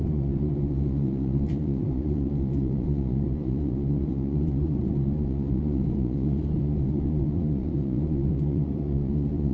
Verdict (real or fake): fake